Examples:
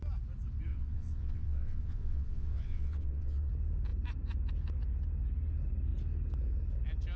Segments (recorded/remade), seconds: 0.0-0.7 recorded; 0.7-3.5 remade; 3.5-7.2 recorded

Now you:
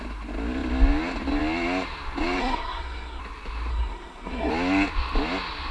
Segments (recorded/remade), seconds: 0.0-2.4 recorded; 2.4-3.2 remade; 3.2-3.7 recorded; 3.7-4.5 remade; 4.5-5.7 recorded

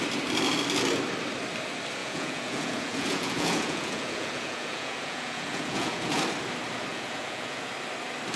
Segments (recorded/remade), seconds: 0.0-2.0 recorded; 2.0-6.2 remade; 6.2-6.9 recorded; 6.9-7.7 remade; 7.7-8.4 recorded

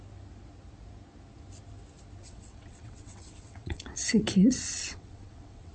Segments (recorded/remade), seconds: 0.0-2.2 recorded; 2.2-5.7 remade

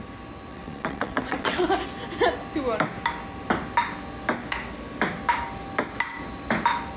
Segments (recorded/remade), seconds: 0.0-0.5 recorded; 0.5-1.7 remade; 1.7-7.0 recorded

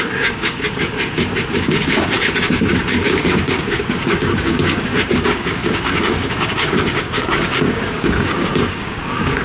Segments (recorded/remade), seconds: 0.0-9.4 remade

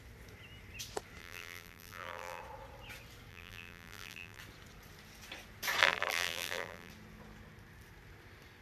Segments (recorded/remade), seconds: 0.0-1.2 recorded; 1.2-2.4 remade; 2.4-3.3 recorded; 3.3-4.4 remade; 4.4-5.8 recorded; 5.8-6.9 remade; 6.9-8.6 recorded

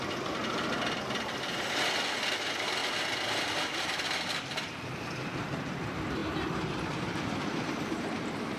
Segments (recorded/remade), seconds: 0.0-0.4 remade; 0.4-2.3 recorded; 2.3-2.8 remade; 2.8-3.4 recorded; 3.4-8.6 remade